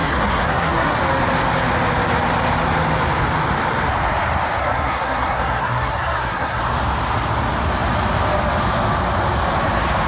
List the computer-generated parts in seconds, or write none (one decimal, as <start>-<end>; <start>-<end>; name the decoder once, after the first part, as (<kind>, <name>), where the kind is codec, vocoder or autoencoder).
0.0-1.0 (codec, SNAC); 4.6-6.6